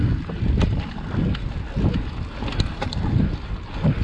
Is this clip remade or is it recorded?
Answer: recorded